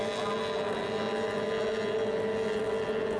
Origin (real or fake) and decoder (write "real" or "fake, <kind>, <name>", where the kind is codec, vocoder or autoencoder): real